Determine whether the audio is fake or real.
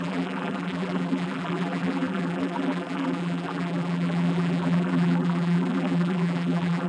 fake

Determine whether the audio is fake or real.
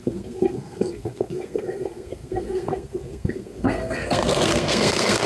fake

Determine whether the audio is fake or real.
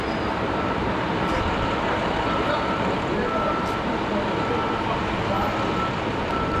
real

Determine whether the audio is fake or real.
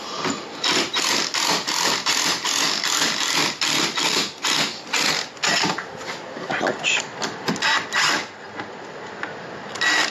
real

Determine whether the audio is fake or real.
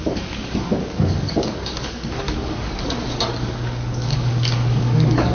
fake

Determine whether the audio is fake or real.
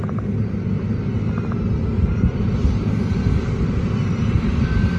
real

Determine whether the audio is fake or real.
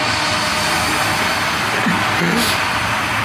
real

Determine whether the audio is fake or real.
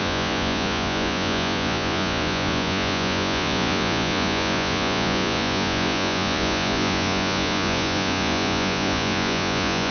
fake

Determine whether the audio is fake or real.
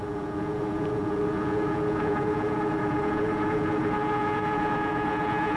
fake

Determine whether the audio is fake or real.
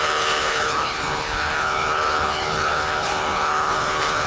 fake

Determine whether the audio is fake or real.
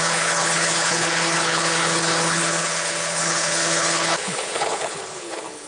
fake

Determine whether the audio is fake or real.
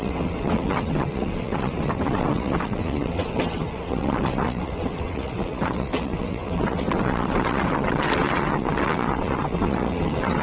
fake